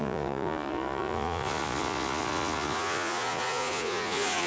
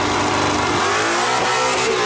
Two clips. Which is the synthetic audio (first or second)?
first